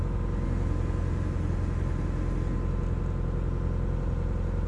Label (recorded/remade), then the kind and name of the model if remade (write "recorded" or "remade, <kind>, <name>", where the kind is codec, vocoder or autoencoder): recorded